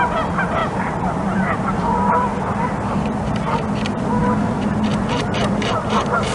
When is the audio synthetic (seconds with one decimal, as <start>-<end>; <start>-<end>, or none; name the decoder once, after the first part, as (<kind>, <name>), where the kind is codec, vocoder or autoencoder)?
0.0-6.3 (vocoder, BigVGAN v2)